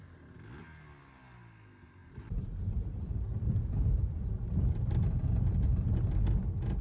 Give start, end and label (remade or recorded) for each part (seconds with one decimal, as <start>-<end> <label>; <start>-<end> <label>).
0.0-2.0 recorded; 2.0-6.1 remade; 6.1-6.8 recorded

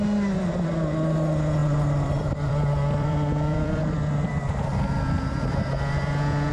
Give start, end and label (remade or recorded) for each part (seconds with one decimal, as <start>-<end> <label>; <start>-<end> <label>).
0.0-1.6 recorded; 1.6-3.8 remade; 3.8-6.5 recorded